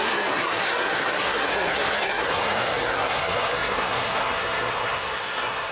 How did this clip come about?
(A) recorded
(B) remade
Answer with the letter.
B